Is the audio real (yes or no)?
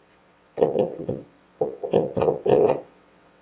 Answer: no